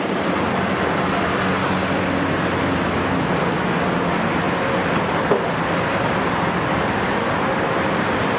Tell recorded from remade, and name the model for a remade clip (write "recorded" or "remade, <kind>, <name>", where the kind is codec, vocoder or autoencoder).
recorded